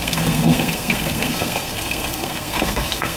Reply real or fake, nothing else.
fake